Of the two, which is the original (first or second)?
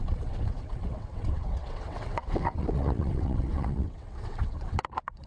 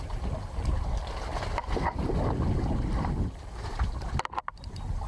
second